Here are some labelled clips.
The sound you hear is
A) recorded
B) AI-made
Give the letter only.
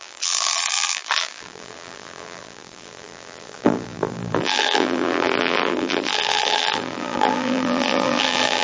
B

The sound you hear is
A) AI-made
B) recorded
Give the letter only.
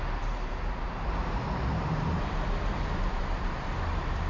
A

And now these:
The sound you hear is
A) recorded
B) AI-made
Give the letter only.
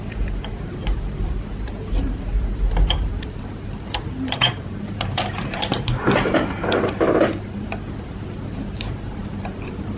B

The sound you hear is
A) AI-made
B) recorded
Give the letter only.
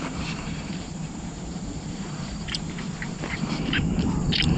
A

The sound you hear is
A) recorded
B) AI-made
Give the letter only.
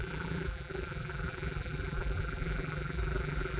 B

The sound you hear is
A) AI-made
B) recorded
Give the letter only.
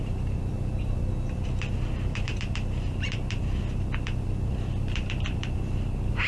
A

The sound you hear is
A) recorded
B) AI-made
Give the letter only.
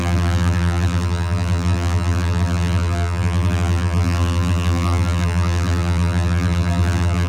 B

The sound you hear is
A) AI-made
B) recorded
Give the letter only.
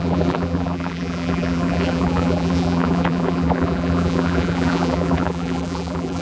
A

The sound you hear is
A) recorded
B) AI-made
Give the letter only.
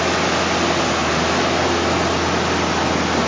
A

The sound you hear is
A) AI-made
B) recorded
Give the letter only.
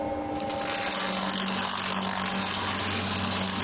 B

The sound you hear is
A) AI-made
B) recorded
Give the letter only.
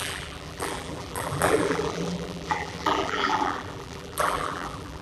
A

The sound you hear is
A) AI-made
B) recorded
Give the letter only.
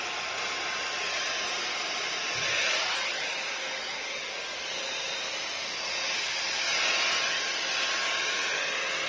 B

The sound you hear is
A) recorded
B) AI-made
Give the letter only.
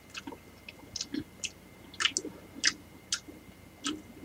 A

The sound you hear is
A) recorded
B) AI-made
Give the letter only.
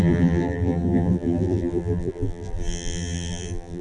B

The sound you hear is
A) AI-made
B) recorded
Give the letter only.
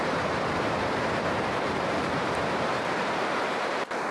A